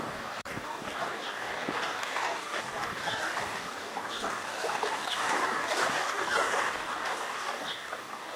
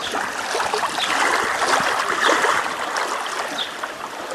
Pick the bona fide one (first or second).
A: second